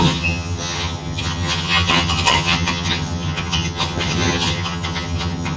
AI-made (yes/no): yes